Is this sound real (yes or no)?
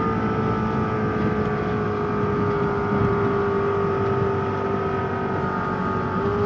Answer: yes